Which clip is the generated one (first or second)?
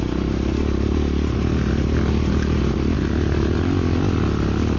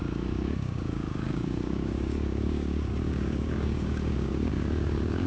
second